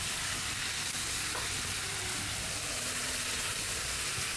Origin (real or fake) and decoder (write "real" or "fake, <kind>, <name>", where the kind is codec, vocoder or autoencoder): real